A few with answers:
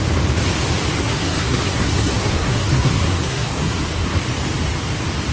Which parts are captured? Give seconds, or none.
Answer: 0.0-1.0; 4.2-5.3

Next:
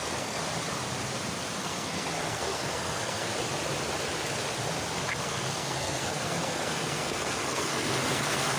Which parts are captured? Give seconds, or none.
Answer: 0.4-1.6; 3.3-5.2

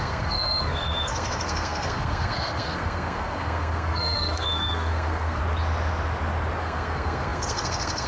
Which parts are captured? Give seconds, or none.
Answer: 5.4-6.6

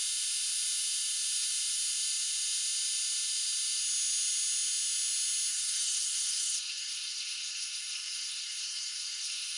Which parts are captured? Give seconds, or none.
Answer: 0.0-5.5

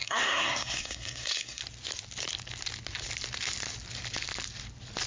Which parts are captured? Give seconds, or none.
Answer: 1.6-5.1